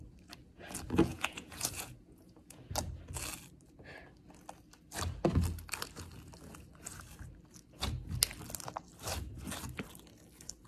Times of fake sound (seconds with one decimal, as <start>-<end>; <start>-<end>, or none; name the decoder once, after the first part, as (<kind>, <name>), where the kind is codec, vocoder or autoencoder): 1.1-2.7 (vocoder, Vocos)